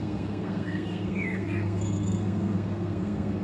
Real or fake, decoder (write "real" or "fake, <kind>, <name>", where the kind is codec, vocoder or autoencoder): fake, codec, SNAC